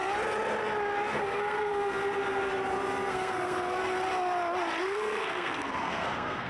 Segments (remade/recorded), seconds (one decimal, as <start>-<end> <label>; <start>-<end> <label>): 0.0-1.2 recorded; 1.2-1.7 remade; 1.7-3.1 recorded; 3.1-3.8 remade; 3.8-4.8 recorded; 4.8-6.5 remade